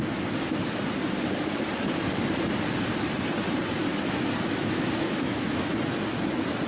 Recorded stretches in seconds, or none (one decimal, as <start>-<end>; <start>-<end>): 0.0-3.8; 5.7-6.7